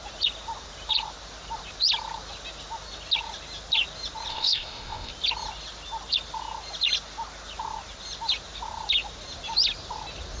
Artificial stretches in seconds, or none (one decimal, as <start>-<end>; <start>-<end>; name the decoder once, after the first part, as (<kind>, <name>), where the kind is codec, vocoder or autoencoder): 4.3-5.1 (codec, ZipCodec)